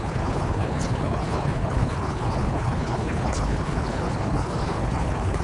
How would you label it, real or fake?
fake